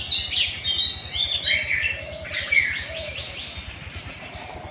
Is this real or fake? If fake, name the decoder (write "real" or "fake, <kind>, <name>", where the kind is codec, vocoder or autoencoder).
real